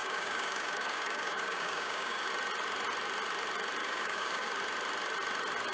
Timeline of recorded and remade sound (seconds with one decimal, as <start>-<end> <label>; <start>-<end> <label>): 0.0-2.3 remade; 2.3-3.8 recorded; 3.8-4.5 remade; 4.5-5.7 recorded